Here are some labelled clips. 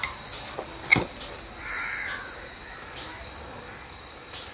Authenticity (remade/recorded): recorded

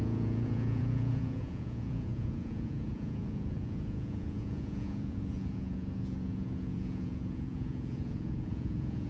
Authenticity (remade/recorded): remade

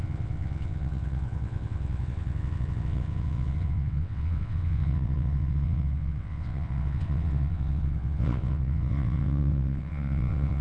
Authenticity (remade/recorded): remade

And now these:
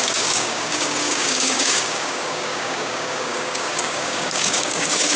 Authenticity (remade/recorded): remade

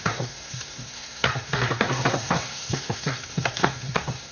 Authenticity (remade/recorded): remade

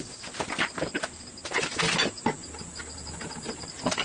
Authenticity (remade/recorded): recorded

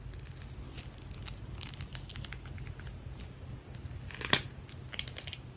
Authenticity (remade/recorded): recorded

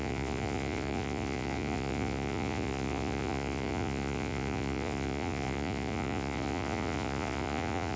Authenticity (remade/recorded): remade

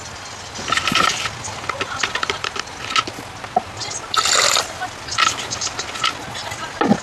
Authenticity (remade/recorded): recorded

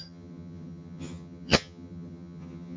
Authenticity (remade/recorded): remade